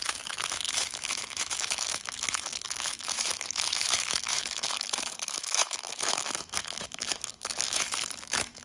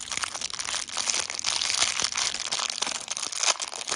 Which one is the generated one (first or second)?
first